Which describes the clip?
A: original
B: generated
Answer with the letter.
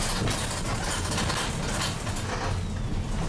A